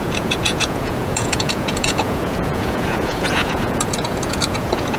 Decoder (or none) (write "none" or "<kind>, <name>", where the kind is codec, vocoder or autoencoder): vocoder, Vocos